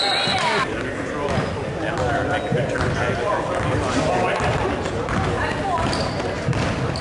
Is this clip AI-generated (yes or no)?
no